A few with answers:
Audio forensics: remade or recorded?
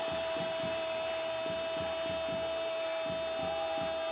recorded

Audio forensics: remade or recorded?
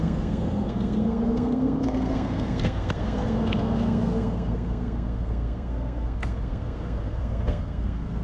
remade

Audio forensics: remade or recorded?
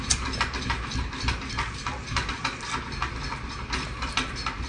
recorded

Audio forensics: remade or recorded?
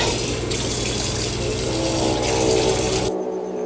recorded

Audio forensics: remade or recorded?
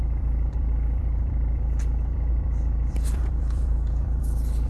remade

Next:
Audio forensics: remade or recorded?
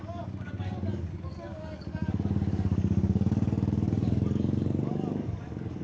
remade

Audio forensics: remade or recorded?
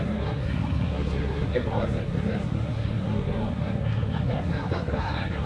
remade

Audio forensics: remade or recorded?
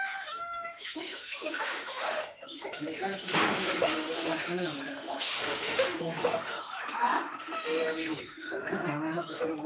remade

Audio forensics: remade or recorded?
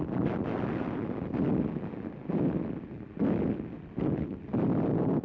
recorded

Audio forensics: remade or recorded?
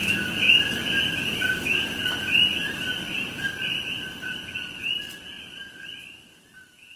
recorded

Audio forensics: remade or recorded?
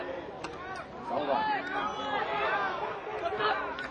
recorded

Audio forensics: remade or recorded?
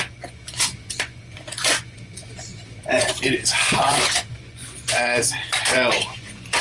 remade